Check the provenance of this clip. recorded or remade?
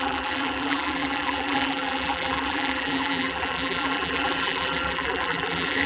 remade